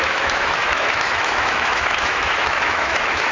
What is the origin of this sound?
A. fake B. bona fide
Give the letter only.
A